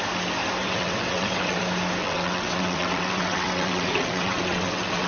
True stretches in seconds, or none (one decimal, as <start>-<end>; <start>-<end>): 0.0-0.6; 1.6-2.0